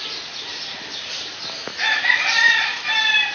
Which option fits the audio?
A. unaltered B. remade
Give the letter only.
A